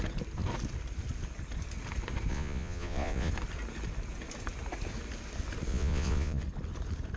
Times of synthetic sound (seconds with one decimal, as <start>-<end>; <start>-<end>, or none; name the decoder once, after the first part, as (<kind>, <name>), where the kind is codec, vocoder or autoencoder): 2.3-3.3 (vocoder, Vocos); 5.7-6.4